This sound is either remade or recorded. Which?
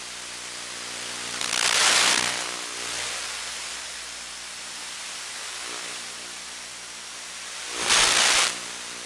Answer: recorded